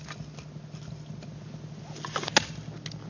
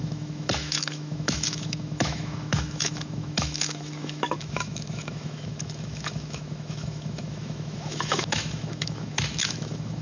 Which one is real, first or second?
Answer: first